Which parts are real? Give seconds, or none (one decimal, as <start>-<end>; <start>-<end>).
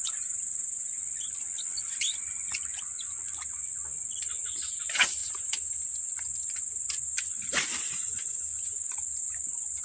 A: 1.0-4.2